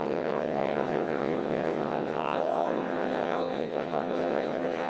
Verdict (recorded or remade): remade